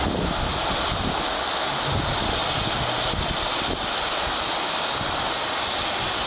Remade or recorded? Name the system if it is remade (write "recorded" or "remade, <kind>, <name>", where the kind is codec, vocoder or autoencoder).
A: recorded